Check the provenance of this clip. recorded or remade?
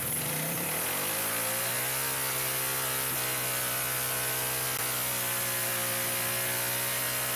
recorded